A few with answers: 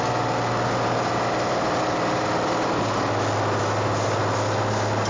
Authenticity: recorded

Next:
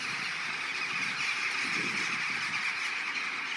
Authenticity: recorded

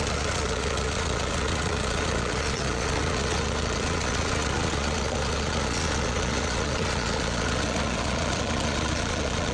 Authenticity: remade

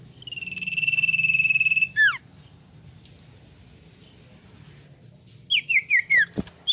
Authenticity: recorded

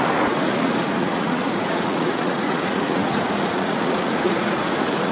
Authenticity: remade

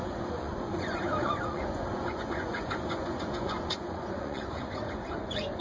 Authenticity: remade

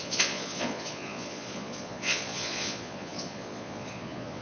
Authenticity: remade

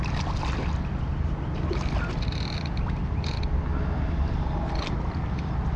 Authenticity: recorded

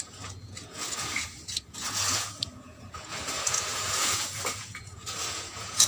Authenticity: remade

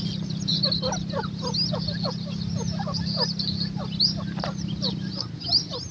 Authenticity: recorded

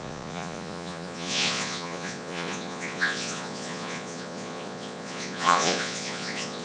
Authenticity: remade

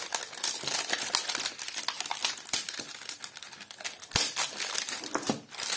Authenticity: recorded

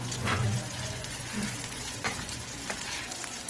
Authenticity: remade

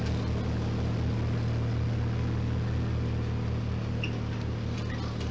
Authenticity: recorded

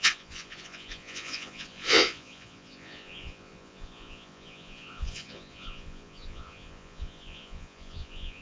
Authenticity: remade